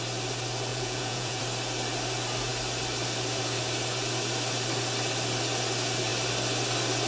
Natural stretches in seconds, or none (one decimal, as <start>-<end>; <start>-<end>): 0.0-0.7; 1.4-7.1